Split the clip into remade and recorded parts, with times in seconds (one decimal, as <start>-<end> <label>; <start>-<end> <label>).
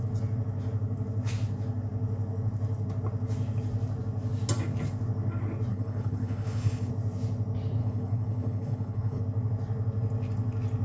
0.0-5.7 recorded; 5.7-6.9 remade; 6.9-7.8 recorded; 7.8-9.2 remade; 9.2-10.8 recorded